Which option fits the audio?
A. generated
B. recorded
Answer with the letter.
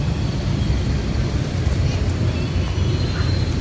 B